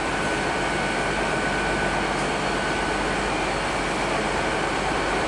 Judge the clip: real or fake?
real